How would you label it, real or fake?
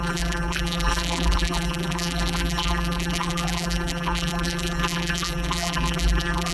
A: fake